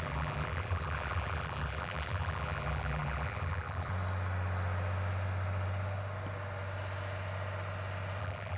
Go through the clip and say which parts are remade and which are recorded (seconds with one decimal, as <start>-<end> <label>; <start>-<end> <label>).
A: 0.0-3.9 remade; 3.9-8.2 recorded; 8.2-8.6 remade